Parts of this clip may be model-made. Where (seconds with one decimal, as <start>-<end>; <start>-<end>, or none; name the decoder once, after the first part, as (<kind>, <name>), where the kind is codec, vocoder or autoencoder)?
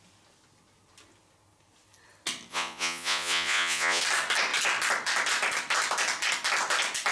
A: 2.5-4.0 (vocoder, Vocos)